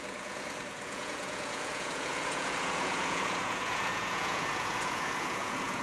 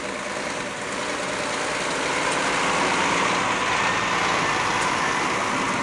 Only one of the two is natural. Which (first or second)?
second